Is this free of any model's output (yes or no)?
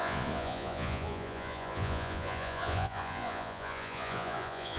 no